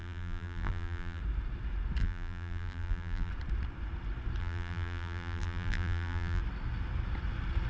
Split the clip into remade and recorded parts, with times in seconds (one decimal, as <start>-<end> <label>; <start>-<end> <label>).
0.0-1.2 remade; 1.2-2.0 recorded; 2.0-3.3 remade; 3.3-4.4 recorded; 4.4-6.4 remade; 6.4-7.7 recorded